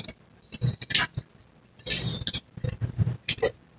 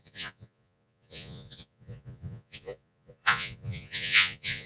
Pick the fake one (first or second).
second